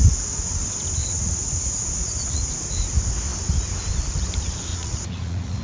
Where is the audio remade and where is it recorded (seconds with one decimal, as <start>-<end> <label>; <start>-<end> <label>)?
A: 0.0-1.0 recorded; 1.0-2.5 remade; 2.5-4.7 recorded; 4.7-5.6 remade